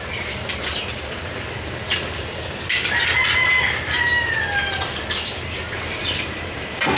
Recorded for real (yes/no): yes